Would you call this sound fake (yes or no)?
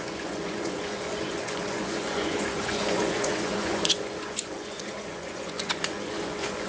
yes